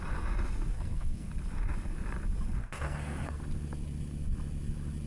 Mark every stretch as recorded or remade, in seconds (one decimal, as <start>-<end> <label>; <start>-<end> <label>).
0.0-0.7 recorded; 0.7-1.3 remade; 1.3-2.6 recorded; 2.6-3.4 remade; 3.4-5.1 recorded